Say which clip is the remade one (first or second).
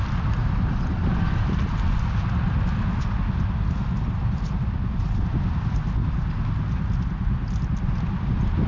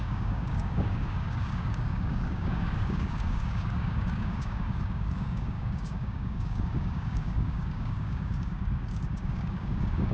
second